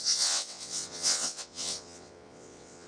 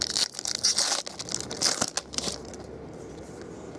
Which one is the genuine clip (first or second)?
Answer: second